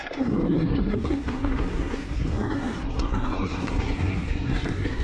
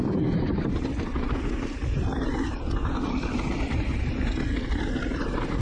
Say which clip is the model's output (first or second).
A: first